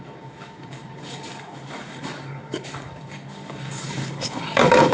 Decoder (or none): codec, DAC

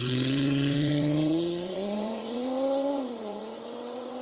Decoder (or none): vocoder, WaveNeXt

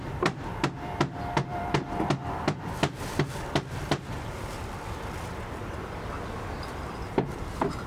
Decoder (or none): vocoder, BigVGAN v2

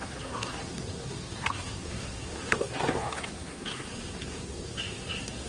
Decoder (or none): codec, SNAC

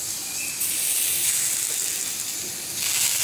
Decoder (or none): none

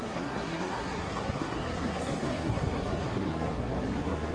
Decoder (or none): codec, SNAC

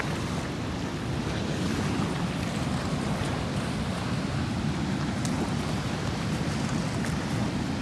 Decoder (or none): none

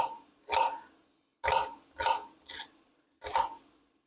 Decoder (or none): none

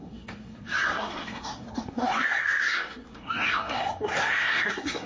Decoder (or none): codec, SNAC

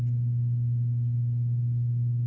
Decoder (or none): none